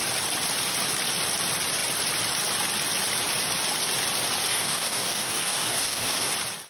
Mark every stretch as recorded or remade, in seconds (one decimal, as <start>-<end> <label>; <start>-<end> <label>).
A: 0.0-4.5 recorded; 4.5-6.3 remade; 6.3-6.7 recorded